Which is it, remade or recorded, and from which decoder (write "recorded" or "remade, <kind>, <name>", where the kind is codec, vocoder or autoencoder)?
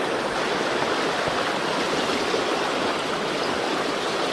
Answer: recorded